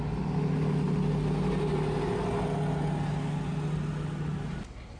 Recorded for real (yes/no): yes